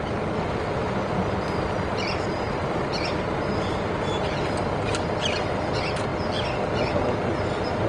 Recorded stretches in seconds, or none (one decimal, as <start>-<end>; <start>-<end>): 0.0-0.8; 5.5-7.9